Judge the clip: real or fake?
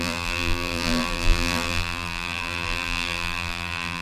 fake